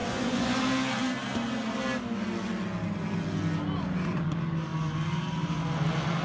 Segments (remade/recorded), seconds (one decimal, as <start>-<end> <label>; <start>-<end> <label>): 0.0-0.6 remade; 0.6-6.2 recorded